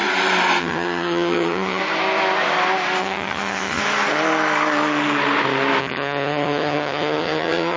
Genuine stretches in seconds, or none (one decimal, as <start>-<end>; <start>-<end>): 0.0-0.6; 1.8-3.0; 3.8-5.8